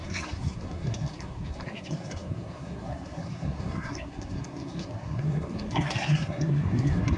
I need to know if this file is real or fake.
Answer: fake